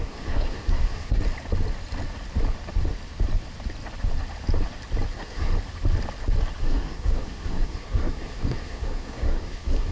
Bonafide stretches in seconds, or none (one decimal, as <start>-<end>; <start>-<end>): 1.2-5.1; 5.5-6.6